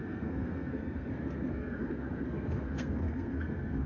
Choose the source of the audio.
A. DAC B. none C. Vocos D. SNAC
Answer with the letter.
D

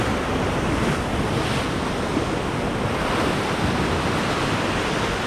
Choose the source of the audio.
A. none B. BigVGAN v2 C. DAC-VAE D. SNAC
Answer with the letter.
A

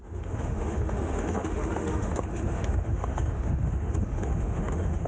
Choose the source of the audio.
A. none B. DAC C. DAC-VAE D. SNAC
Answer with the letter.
C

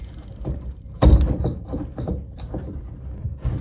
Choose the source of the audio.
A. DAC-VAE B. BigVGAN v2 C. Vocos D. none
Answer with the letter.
B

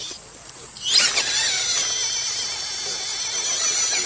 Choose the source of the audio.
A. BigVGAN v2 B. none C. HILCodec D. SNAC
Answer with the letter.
B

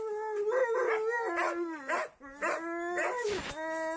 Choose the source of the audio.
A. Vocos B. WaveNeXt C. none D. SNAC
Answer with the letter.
C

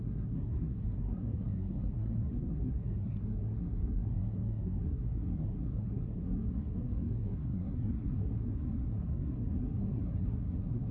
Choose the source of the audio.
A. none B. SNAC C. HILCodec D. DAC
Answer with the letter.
B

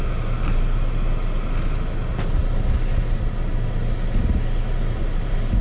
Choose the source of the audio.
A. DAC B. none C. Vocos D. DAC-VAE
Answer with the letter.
B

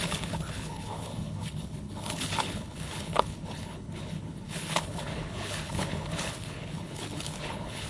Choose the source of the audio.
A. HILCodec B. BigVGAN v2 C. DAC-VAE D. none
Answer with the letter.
A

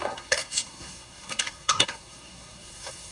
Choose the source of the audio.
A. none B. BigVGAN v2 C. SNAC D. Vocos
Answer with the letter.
C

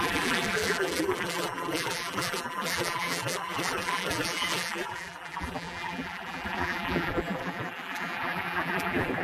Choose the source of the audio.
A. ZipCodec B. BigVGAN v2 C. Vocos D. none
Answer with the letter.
B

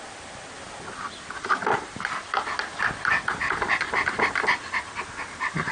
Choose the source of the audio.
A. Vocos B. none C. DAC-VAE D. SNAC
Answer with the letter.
B